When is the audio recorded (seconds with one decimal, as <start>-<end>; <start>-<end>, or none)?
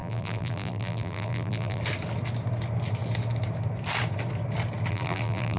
1.8-4.9